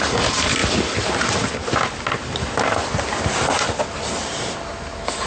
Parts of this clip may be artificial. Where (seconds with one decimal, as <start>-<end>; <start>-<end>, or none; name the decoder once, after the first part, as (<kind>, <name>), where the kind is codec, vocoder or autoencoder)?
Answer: none